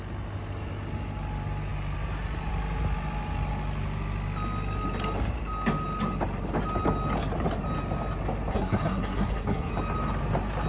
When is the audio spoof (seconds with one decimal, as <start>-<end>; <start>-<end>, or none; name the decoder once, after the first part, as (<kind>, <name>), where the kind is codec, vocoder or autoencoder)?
8.5-9.7 (codec, SNAC)